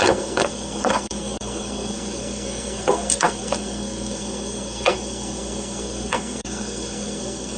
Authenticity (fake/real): fake